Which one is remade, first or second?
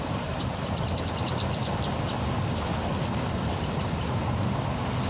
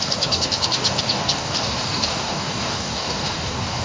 second